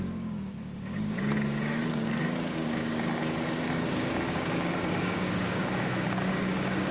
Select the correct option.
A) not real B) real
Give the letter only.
A